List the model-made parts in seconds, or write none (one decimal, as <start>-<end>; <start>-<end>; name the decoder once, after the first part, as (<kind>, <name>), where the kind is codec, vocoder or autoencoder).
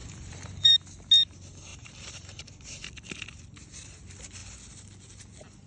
0.0-0.7 (vocoder, BigVGAN v2); 1.7-2.5